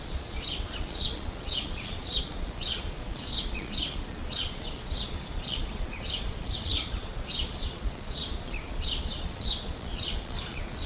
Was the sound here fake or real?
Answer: fake